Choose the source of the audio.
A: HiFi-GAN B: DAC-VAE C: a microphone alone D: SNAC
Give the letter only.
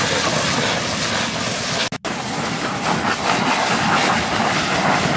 C